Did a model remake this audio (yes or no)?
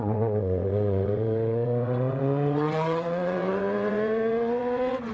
yes